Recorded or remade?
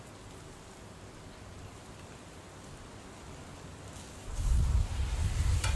recorded